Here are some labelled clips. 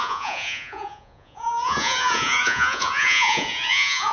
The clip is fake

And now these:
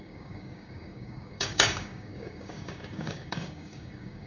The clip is fake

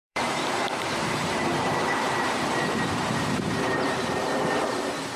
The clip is fake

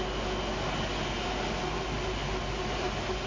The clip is real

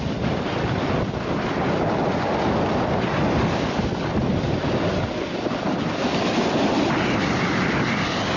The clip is real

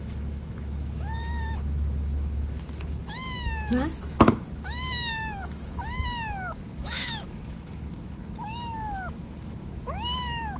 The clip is fake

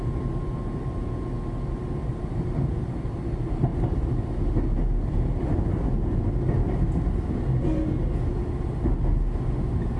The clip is real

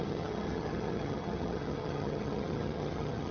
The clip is fake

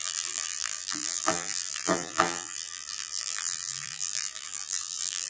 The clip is fake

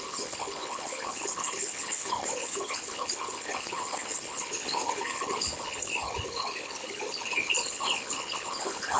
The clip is fake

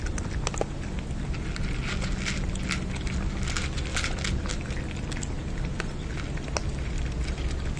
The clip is real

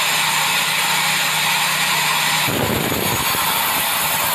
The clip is real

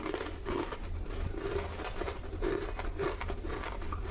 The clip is real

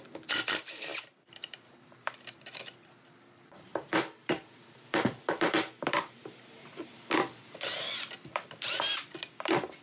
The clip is fake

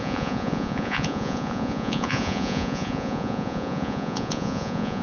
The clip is fake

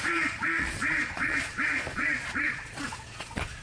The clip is fake